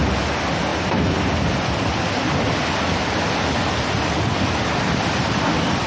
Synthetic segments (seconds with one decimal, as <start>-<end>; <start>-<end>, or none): none